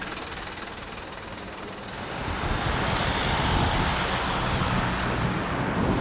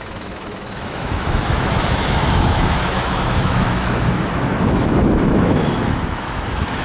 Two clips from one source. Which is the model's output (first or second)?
second